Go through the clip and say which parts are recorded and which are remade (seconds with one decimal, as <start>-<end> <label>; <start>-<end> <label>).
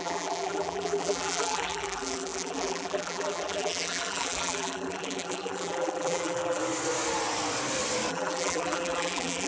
0.0-6.6 remade; 6.6-8.1 recorded; 8.1-9.5 remade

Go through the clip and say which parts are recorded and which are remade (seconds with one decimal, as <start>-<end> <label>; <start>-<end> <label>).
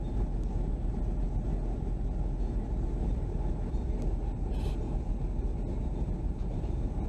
0.0-7.1 recorded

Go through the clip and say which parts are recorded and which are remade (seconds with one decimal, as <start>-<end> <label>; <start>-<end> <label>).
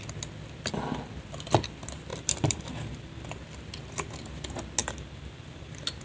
0.0-2.1 recorded; 2.1-3.3 remade; 3.3-4.8 recorded; 4.8-6.0 remade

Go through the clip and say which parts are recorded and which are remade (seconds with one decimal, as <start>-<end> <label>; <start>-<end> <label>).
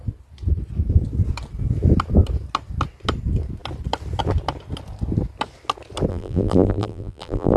0.0-6.1 recorded; 6.1-7.6 remade